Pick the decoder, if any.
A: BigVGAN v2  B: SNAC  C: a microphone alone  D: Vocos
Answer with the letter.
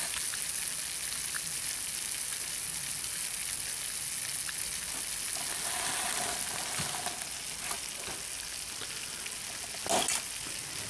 C